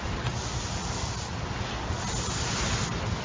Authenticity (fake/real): real